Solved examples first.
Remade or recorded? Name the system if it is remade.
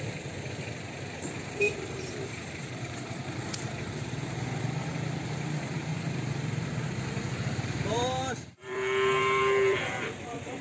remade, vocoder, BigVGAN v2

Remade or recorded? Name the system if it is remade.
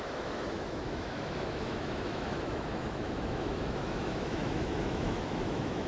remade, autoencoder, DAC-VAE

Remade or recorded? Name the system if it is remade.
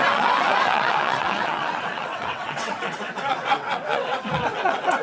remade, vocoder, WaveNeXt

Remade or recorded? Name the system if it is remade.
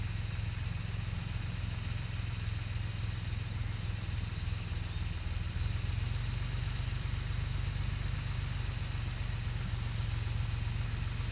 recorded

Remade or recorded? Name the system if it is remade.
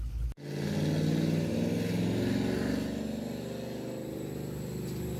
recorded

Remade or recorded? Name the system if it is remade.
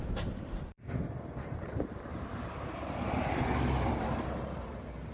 remade, vocoder, BigVGAN v2